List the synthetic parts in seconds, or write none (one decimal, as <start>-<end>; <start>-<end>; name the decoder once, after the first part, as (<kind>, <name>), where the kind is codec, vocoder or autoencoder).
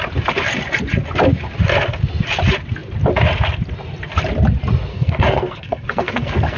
4.9-6.6 (codec, SNAC)